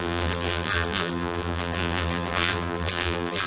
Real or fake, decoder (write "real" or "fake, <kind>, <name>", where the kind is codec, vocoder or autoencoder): fake, vocoder, BigVGAN v2